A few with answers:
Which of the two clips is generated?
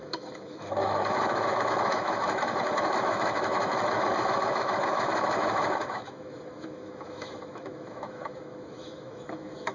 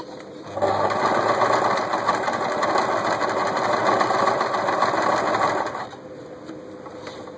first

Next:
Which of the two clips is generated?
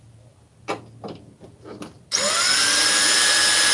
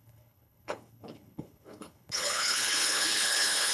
second